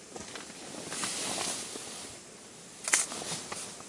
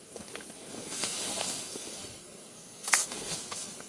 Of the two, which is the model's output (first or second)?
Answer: second